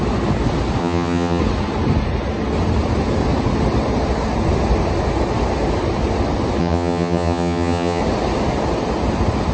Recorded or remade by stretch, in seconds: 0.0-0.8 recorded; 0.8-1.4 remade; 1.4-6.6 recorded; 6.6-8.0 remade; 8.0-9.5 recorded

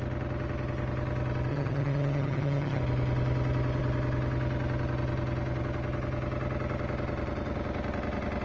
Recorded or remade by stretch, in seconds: 0.0-1.5 recorded; 1.5-2.8 remade; 2.8-8.4 recorded

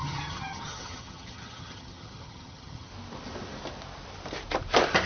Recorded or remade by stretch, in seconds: 0.0-2.9 remade; 2.9-5.1 recorded

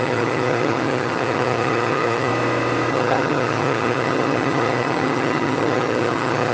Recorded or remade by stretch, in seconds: 0.0-2.3 remade; 2.3-2.9 recorded; 2.9-6.5 remade

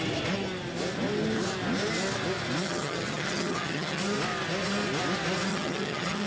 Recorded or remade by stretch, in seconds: 0.0-2.6 recorded; 2.6-4.0 remade; 4.0-5.5 recorded; 5.5-6.3 remade

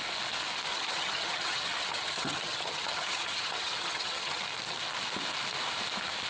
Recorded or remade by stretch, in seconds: 0.0-0.7 recorded; 0.7-4.4 remade; 4.4-6.3 recorded

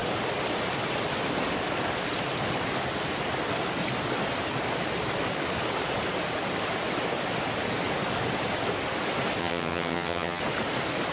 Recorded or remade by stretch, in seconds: 0.0-9.4 recorded; 9.4-10.4 remade; 10.4-11.1 recorded

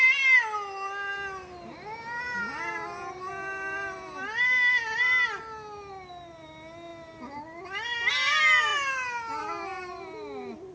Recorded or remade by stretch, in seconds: 0.0-10.7 recorded